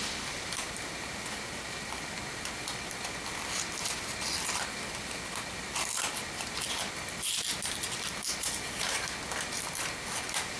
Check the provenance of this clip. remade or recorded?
recorded